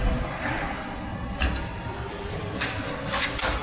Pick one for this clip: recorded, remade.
recorded